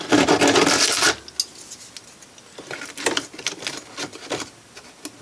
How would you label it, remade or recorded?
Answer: recorded